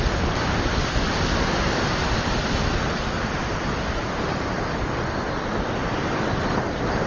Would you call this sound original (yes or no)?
yes